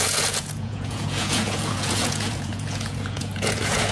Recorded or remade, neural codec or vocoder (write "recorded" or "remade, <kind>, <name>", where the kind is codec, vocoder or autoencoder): remade, vocoder, Vocos